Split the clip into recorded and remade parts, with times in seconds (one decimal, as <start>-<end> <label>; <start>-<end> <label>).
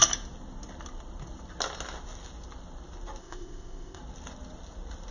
0.0-3.2 recorded; 3.2-4.0 remade; 4.0-5.1 recorded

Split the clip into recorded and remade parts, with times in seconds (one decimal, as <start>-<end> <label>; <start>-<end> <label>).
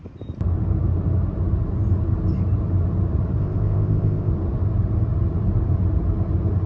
0.0-3.4 recorded; 3.4-4.3 remade; 4.3-6.7 recorded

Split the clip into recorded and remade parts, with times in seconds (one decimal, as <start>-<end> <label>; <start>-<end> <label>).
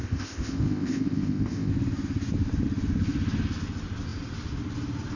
0.0-1.7 remade; 1.7-5.2 recorded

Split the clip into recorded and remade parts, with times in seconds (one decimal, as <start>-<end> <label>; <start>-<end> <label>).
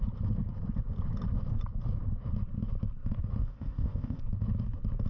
0.0-3.4 recorded; 3.4-4.2 remade; 4.2-5.1 recorded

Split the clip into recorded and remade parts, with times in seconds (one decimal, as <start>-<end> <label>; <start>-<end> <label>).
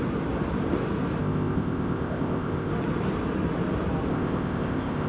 0.0-1.2 recorded; 1.2-2.7 remade; 2.7-4.1 recorded; 4.1-5.1 remade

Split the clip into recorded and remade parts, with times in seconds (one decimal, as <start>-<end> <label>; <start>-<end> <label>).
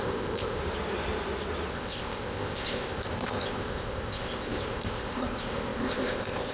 0.0-0.6 remade; 0.6-1.7 recorded; 1.7-6.5 remade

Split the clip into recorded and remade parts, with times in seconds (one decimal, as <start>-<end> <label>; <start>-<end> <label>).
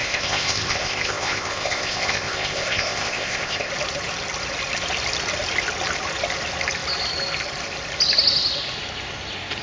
0.0-3.7 remade; 3.7-9.6 recorded